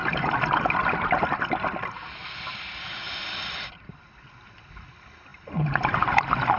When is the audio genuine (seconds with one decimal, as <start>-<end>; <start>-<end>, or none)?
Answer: 0.9-3.0; 4.3-5.3; 6.0-6.6